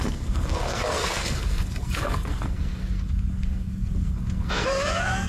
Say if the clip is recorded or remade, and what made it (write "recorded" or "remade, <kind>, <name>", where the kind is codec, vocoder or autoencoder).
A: remade, codec, SNAC